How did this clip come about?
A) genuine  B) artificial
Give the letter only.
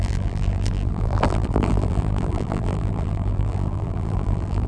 B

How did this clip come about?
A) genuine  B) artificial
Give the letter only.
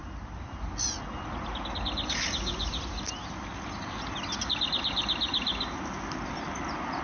A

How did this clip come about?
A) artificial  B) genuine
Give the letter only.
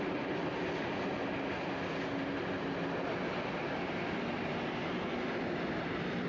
B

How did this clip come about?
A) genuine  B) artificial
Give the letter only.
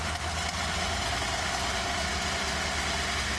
A